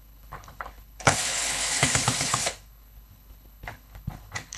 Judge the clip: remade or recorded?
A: remade